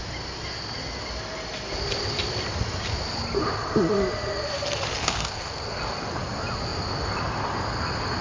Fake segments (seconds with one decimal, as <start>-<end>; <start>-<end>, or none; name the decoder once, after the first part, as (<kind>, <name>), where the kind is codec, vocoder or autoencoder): 5.0-5.8 (codec, SNAC)